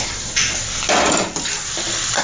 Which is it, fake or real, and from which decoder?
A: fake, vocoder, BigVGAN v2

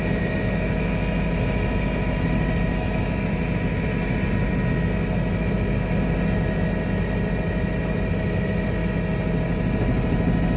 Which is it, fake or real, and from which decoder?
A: real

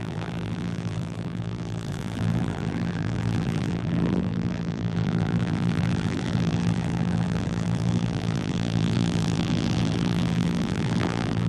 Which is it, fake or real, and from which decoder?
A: fake, vocoder, BigVGAN v2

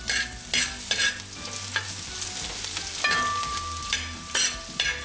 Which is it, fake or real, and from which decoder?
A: real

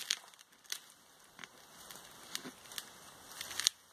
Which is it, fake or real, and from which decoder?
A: real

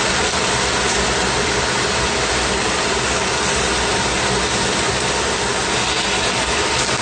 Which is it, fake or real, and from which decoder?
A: real